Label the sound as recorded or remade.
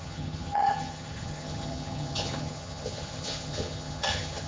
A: remade